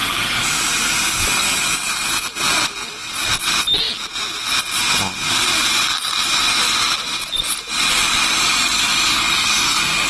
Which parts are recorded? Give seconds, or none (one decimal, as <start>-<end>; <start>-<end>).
0.0-10.1